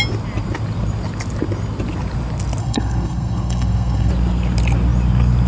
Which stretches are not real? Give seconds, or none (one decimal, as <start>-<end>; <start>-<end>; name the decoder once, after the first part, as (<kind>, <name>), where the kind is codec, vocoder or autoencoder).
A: 2.6-4.1 (codec, SNAC)